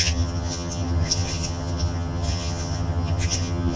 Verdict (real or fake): fake